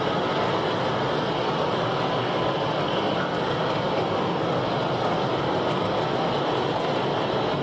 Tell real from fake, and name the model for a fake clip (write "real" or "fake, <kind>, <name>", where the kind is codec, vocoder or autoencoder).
real